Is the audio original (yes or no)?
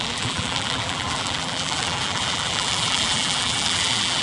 no